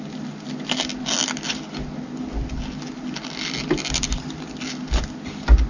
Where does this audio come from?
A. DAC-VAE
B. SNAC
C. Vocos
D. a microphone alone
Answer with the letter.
D